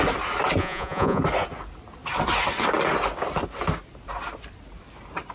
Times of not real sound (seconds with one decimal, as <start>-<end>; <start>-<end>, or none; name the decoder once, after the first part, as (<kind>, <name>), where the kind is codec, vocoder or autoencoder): 0.6-1.2 (vocoder, Vocos)